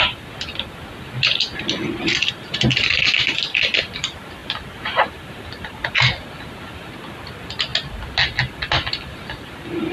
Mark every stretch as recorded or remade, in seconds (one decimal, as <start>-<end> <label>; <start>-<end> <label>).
0.0-4.4 recorded; 4.4-5.8 remade; 5.8-9.9 recorded